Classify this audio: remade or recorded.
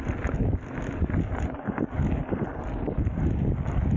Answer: recorded